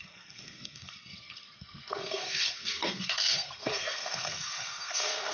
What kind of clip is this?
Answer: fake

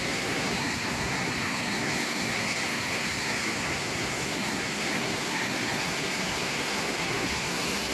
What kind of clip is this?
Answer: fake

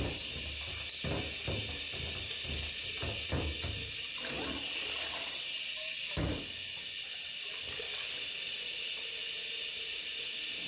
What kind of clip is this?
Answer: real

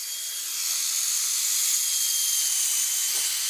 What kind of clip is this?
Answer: real